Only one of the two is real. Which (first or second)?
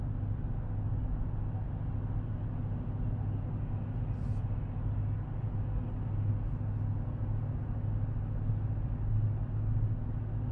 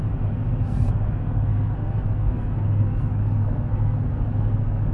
first